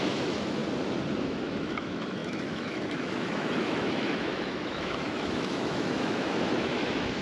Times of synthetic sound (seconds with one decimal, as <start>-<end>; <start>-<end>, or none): 0.0-0.6; 1.2-7.2